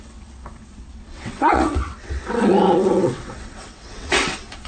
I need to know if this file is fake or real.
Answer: fake